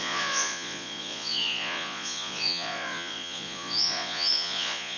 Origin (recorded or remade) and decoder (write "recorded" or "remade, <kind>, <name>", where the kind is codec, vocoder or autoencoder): remade, vocoder, Vocos